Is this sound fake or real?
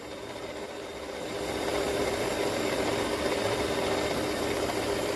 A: fake